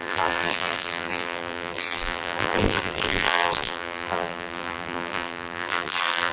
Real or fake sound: fake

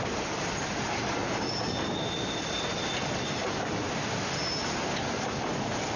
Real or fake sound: real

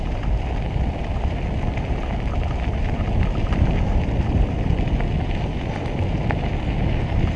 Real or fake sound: real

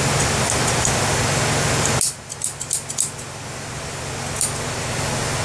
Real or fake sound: real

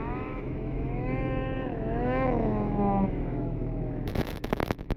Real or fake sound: fake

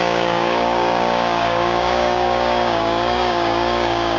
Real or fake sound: fake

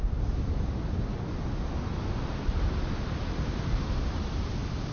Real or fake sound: real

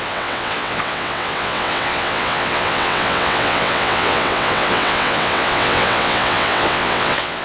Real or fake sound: fake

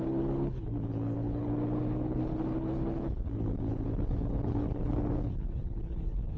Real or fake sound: fake